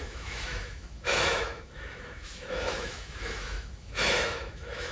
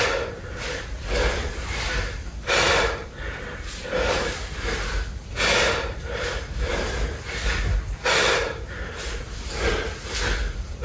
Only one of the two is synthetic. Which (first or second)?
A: first